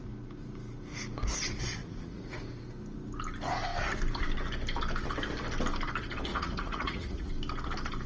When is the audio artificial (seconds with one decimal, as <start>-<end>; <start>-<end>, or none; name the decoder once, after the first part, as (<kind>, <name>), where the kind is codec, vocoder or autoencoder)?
1.8-2.4 (vocoder, Vocos); 6.3-7.3